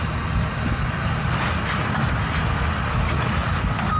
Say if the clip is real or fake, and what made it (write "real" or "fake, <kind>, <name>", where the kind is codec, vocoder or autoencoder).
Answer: real